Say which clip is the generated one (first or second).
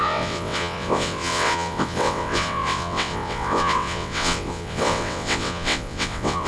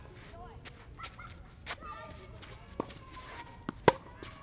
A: first